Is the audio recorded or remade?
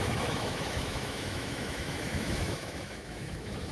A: remade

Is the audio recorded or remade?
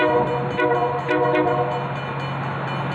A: recorded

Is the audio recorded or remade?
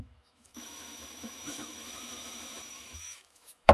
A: remade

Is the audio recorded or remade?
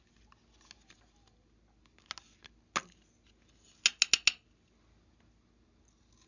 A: recorded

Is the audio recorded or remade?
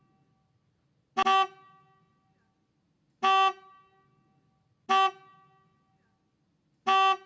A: recorded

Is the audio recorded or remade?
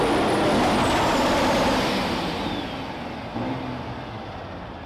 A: recorded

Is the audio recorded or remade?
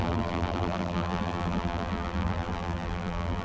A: remade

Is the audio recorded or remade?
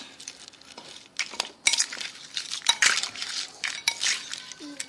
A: recorded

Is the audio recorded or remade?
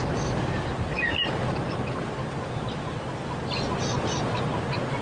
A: recorded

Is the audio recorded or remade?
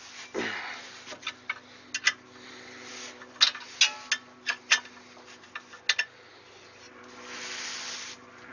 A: recorded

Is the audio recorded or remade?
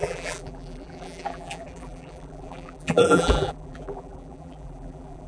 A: remade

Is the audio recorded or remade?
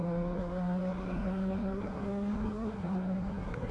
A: remade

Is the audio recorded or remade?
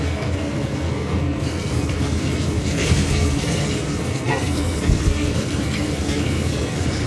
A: remade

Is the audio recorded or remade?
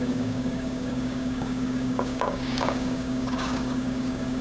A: remade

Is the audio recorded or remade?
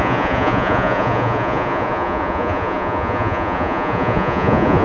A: remade